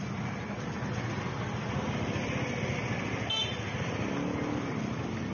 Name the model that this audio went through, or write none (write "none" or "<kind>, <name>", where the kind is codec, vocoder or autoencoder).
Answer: none